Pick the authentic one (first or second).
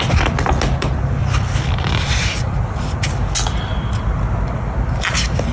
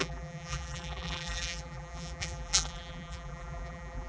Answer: first